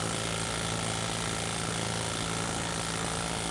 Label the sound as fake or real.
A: real